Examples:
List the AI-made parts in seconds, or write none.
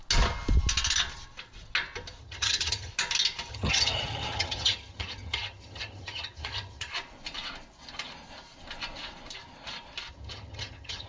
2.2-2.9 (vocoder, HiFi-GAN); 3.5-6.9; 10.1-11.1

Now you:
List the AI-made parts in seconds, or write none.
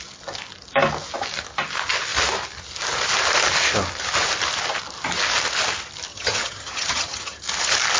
6.1-7.4 (vocoder, HiFi-GAN)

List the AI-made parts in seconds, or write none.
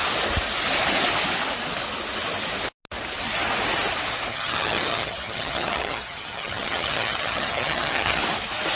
4.3-8.2 (vocoder, HiFi-GAN)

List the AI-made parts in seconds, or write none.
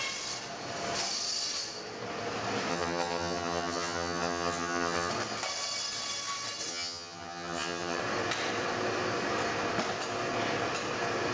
2.7-5.1 (vocoder, HiFi-GAN); 6.7-8.0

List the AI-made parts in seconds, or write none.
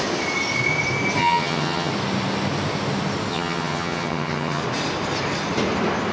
1.2-1.9 (vocoder, HiFi-GAN); 3.3-4.6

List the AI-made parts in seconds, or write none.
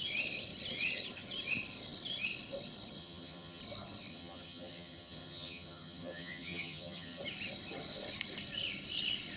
3.0-3.6 (vocoder, HiFi-GAN); 4.1-7.2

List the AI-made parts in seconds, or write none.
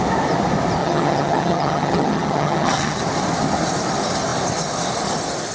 0.8-3.0 (vocoder, HiFi-GAN)